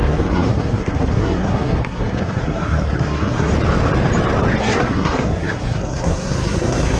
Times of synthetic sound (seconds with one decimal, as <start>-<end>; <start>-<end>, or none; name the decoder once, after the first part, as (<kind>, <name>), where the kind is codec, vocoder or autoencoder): 0.0-3.5 (codec, SNAC); 4.6-7.0